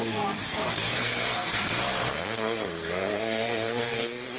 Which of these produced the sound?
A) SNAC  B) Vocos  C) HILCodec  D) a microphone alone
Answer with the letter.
A